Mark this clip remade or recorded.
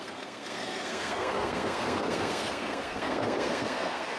remade